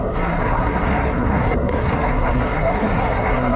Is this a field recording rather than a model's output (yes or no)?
no